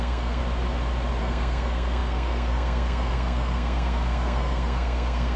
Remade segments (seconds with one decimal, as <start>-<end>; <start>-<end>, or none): 0.0-0.4; 1.2-5.4